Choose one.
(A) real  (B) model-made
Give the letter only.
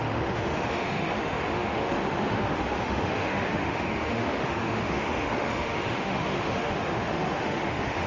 B